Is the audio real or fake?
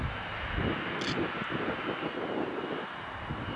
real